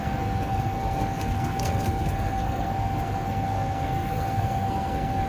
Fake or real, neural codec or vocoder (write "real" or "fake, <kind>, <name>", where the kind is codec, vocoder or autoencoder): fake, codec, SNAC